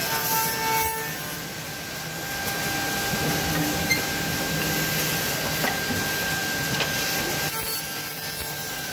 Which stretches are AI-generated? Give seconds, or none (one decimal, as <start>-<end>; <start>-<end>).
none